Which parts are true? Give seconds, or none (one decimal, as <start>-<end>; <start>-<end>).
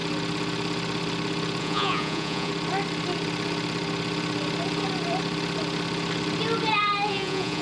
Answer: 0.0-1.6; 2.5-7.1